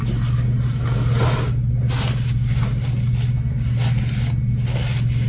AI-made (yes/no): no